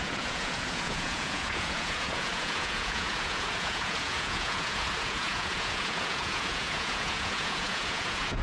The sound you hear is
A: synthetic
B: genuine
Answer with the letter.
A